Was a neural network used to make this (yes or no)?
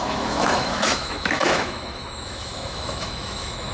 yes